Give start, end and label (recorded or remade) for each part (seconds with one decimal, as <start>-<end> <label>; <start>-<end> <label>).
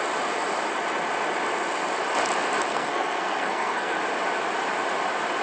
0.0-2.7 recorded; 2.7-4.0 remade; 4.0-5.4 recorded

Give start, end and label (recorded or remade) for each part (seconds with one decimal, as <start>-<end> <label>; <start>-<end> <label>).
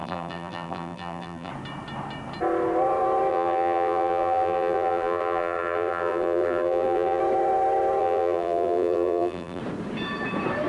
0.0-1.5 remade; 1.5-3.3 recorded; 3.3-7.2 remade; 7.2-8.0 recorded; 8.0-9.6 remade; 9.6-10.7 recorded